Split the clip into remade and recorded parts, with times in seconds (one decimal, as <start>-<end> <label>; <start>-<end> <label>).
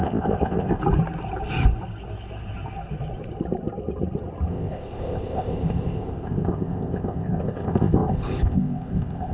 0.0-0.8 remade; 0.8-4.5 recorded; 4.5-9.3 remade